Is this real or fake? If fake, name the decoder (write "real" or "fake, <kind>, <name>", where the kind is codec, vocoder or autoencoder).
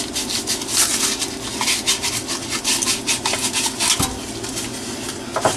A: real